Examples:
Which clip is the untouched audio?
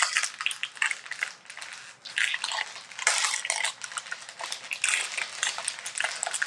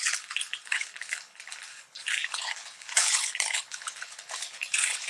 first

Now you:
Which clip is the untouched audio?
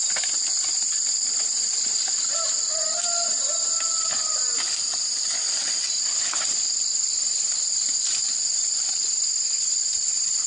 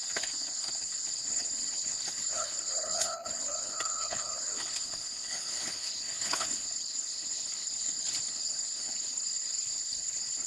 first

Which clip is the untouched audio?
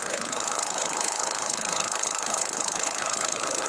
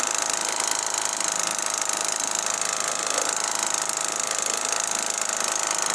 second